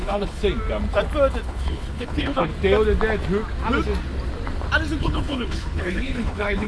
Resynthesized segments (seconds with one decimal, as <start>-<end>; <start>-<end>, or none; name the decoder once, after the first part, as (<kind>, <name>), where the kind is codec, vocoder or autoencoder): 0.0-0.4 (codec, HILCodec); 1.4-2.5; 5.0-6.7